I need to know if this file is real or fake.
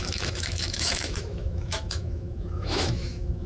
fake